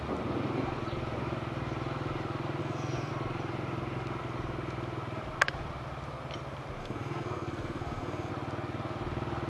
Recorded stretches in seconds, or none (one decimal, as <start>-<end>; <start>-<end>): 0.0-2.6; 3.1-6.8; 8.3-9.5